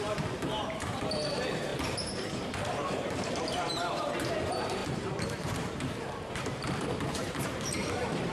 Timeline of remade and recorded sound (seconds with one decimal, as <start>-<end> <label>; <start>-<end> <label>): 0.0-8.3 remade